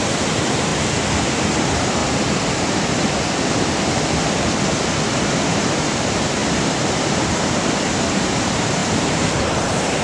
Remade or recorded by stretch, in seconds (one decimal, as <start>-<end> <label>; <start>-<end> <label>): 0.0-0.7 remade; 0.7-1.4 recorded; 1.4-2.0 remade; 2.0-5.2 recorded; 5.2-10.0 remade